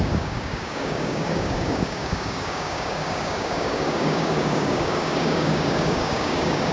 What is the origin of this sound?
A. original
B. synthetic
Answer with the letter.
B